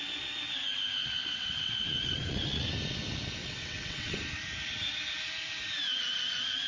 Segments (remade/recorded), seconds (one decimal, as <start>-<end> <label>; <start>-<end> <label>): 0.0-1.0 recorded; 1.0-2.7 remade; 2.7-3.4 recorded; 3.4-4.2 remade; 4.2-6.7 recorded